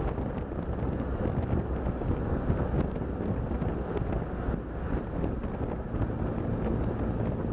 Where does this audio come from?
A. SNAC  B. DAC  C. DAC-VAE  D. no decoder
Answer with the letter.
D